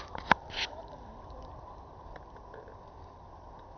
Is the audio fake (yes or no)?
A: yes